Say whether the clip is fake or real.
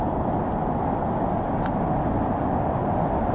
real